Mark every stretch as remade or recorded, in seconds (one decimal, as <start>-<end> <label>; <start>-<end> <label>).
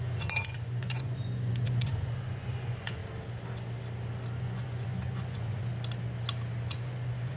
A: 0.0-3.0 remade; 3.0-4.4 recorded; 4.4-5.7 remade; 5.7-6.7 recorded; 6.7-7.4 remade